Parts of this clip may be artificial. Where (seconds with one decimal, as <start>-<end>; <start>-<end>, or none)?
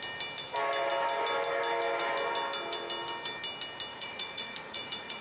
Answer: 3.9-5.2